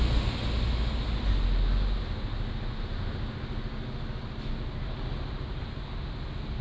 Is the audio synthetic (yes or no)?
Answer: no